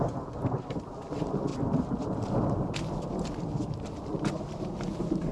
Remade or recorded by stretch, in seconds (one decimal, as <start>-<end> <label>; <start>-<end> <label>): 0.0-5.3 recorded